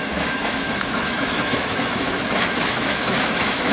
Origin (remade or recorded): remade